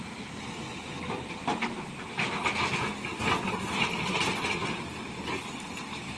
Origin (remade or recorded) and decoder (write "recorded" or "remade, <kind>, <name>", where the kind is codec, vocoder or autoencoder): recorded